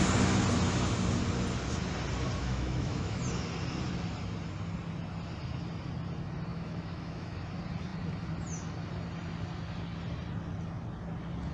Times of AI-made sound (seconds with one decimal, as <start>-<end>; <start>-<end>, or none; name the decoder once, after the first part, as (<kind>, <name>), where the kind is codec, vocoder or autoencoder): 2.4-3.2 (autoencoder, DAC-VAE); 6.5-7.5